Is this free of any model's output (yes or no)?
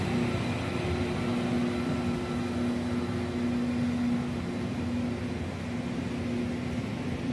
yes